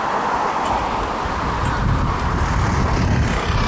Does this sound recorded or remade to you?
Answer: recorded